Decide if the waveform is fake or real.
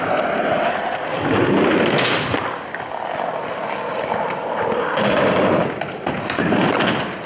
real